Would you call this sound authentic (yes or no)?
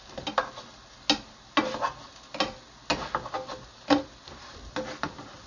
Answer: yes